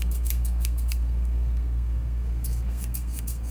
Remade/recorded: remade